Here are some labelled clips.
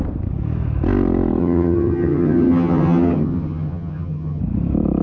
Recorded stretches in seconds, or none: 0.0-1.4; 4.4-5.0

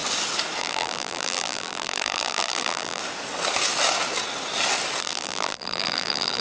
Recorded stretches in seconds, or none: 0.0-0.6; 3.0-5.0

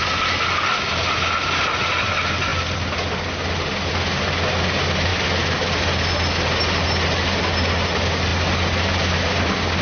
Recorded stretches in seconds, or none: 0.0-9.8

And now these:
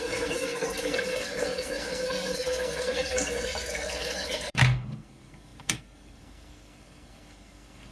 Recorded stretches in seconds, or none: none

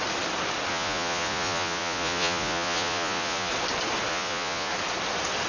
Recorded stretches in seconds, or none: 0.0-0.7; 3.5-4.1; 4.7-5.5

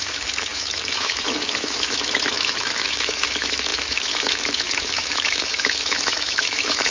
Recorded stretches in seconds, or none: none

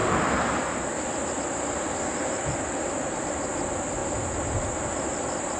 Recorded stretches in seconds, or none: 0.0-5.6

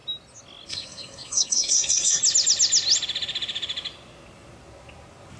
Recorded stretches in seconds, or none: 0.0-0.7; 2.2-5.4